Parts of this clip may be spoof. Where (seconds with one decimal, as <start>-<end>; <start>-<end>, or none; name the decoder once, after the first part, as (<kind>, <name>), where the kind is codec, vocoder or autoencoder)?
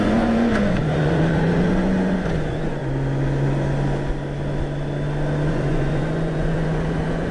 0.0-2.8 (vocoder, Vocos); 5.5-7.3